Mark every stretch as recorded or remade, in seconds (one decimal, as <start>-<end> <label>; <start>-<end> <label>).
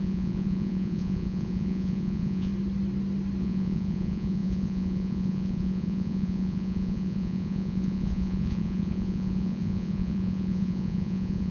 0.0-2.5 remade; 2.5-3.4 recorded; 3.4-11.5 remade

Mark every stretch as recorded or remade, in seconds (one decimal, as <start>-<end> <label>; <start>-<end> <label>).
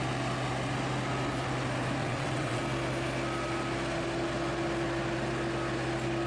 0.0-2.0 recorded; 2.0-2.6 remade; 2.6-6.3 recorded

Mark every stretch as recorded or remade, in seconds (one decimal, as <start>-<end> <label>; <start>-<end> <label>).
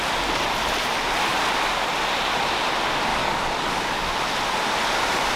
0.0-3.1 recorded; 3.1-4.0 remade; 4.0-5.4 recorded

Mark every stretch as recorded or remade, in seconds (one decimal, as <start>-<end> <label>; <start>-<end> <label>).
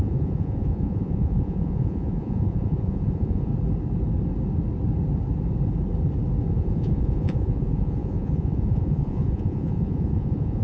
0.0-3.5 remade; 3.5-6.5 recorded; 6.5-10.6 remade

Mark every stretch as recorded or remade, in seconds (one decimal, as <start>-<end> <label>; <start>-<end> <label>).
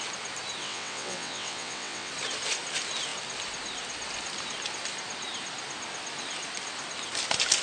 0.0-0.6 recorded; 0.6-2.1 remade; 2.1-7.6 recorded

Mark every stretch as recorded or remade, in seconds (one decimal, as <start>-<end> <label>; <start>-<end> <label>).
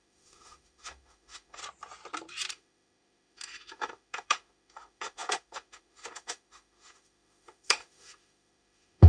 0.0-1.6 remade; 1.6-2.5 recorded; 2.5-9.1 remade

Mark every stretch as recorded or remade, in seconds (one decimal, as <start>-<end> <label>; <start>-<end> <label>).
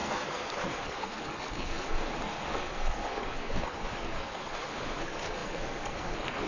0.0-6.5 remade